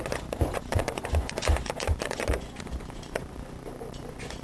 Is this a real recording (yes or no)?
no